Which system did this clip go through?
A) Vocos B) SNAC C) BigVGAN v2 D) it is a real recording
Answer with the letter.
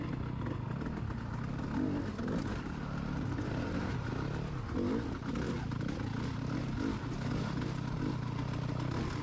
D